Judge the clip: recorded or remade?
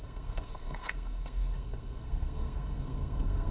remade